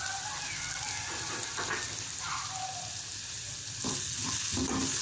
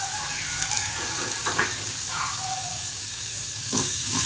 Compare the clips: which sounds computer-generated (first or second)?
second